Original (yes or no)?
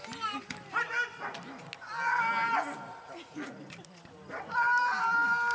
yes